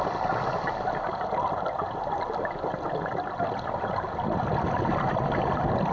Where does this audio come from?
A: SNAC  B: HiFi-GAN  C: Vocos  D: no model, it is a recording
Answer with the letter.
D